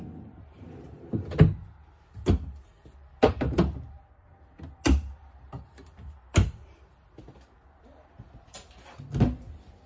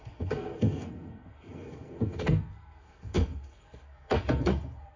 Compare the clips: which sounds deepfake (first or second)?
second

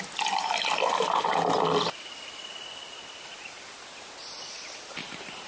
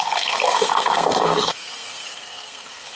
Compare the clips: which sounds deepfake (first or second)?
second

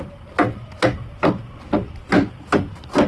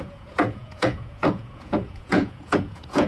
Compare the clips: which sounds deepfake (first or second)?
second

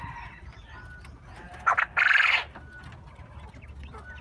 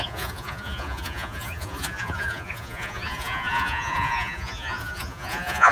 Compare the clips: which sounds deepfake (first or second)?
second